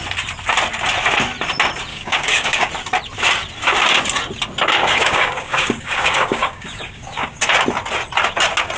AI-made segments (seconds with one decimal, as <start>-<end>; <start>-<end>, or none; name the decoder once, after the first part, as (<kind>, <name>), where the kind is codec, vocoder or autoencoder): 1.9-2.7 (codec, DAC); 4.8-7.4